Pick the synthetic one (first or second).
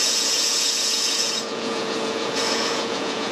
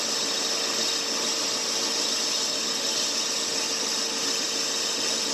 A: first